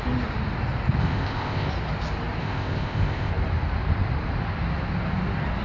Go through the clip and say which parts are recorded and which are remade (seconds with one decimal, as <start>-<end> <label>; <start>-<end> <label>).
0.0-1.0 recorded; 1.0-1.7 remade; 1.7-2.4 recorded; 2.4-3.3 remade; 3.3-5.6 recorded